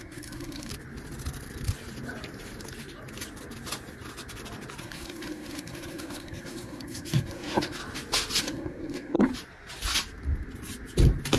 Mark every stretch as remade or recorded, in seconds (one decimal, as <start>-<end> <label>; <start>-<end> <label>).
0.0-0.7 remade; 0.7-4.8 recorded; 4.8-7.8 remade; 7.8-8.4 recorded; 8.4-9.3 remade; 9.3-11.4 recorded